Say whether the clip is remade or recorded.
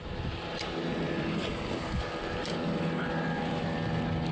recorded